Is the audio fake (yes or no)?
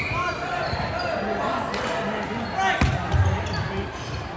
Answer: no